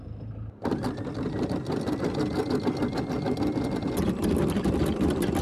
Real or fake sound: real